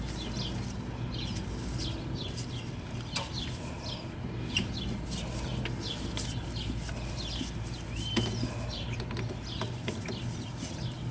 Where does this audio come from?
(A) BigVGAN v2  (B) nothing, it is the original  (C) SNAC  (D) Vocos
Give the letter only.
B